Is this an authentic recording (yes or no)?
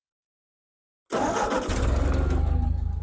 yes